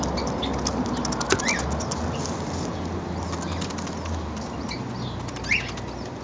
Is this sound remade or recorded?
recorded